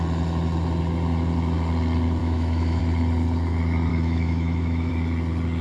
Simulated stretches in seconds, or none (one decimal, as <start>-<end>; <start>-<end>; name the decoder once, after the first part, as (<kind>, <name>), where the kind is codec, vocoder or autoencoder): 2.2-2.8 (autoencoder, DAC-VAE); 3.9-4.9